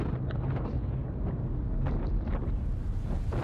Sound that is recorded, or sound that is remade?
recorded